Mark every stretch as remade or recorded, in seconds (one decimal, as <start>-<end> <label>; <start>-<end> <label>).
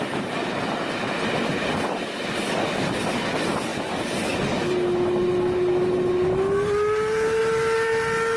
0.0-8.4 recorded